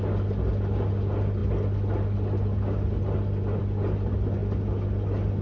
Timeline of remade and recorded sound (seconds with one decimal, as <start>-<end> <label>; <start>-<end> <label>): 0.0-5.4 recorded